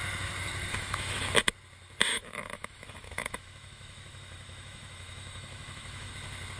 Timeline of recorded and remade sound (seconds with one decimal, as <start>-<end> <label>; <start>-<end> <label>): 0.0-0.7 recorded; 0.7-1.2 remade; 1.2-2.1 recorded; 2.1-6.1 remade; 6.1-6.6 recorded